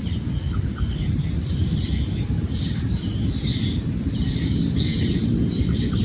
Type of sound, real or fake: fake